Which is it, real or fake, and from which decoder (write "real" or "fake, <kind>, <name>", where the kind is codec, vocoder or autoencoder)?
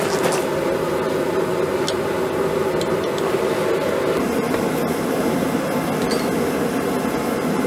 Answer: real